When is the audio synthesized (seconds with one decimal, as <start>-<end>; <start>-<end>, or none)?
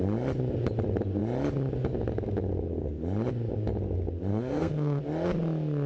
4.3-5.0